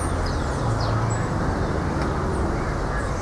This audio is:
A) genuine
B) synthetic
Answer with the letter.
A